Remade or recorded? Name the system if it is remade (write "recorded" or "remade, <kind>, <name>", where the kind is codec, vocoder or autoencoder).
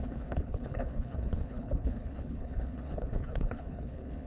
remade, codec, HILCodec